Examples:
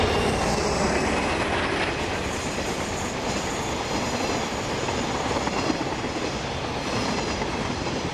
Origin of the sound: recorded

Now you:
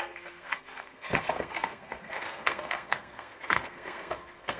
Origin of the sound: remade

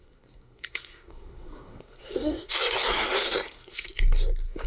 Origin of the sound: remade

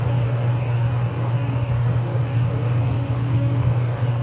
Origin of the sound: remade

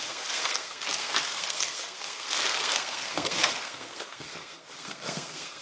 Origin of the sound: remade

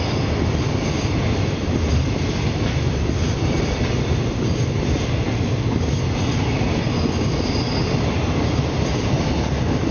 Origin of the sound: recorded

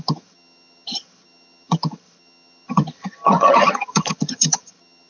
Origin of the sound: remade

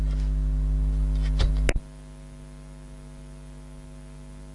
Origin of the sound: recorded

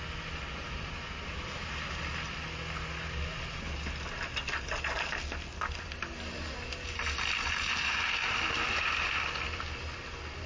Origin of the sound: recorded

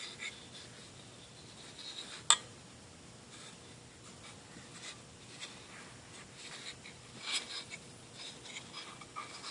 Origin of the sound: recorded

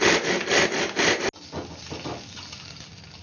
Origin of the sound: recorded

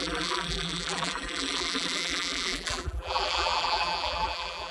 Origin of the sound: remade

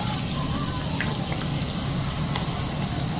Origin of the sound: recorded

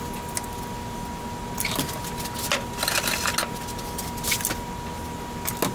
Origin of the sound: recorded